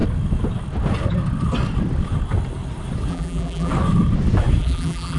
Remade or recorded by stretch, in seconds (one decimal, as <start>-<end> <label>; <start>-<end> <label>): 0.0-3.1 recorded; 3.1-3.7 remade; 3.7-4.6 recorded; 4.6-5.2 remade